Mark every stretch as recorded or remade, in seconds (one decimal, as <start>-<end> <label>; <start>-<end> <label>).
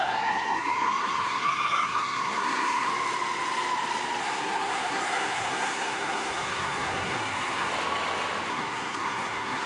0.0-2.9 remade; 2.9-4.2 recorded; 4.2-7.7 remade; 7.7-8.5 recorded; 8.5-9.7 remade